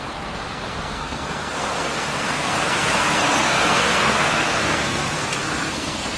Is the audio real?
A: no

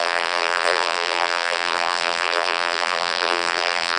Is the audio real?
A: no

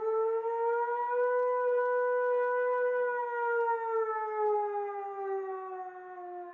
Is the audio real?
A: yes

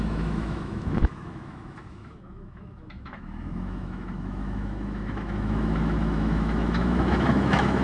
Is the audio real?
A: no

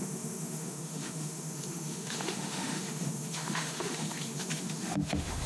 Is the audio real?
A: no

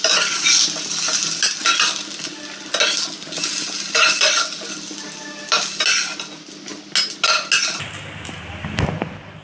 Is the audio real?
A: yes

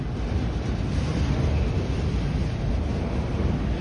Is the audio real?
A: yes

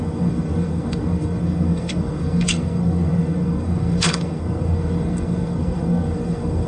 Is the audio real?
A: no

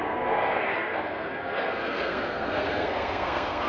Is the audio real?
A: no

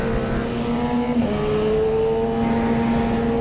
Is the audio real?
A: yes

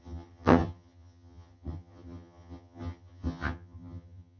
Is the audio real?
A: no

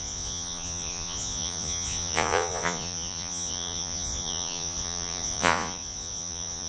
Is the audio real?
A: no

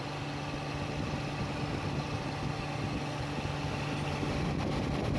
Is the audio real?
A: yes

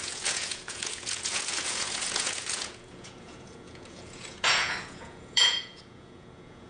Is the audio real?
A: no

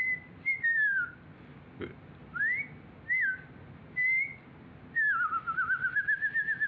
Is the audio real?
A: yes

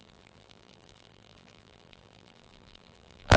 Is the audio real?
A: no